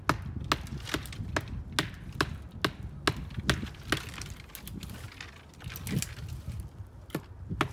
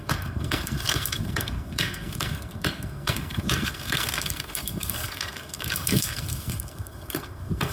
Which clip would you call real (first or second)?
first